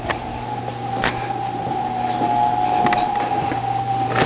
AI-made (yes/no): no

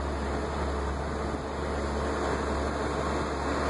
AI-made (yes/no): no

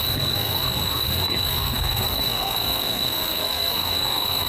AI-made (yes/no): yes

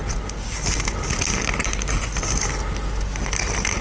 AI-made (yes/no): no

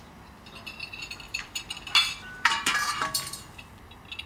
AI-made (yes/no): no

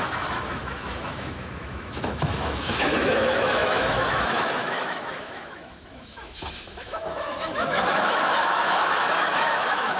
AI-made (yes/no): yes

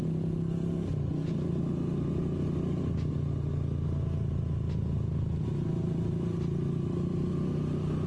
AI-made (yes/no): no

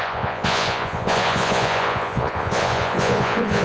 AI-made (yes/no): yes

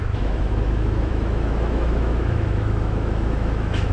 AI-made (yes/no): yes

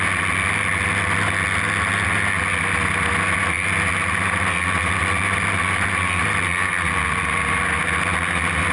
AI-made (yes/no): no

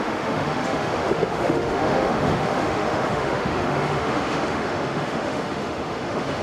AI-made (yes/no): yes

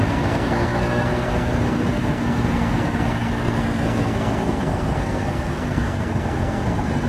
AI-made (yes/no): yes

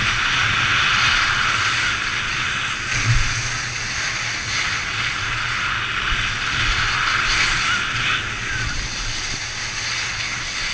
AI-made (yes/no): no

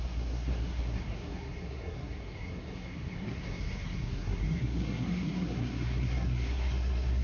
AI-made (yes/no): yes